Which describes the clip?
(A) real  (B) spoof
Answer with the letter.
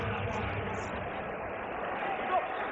A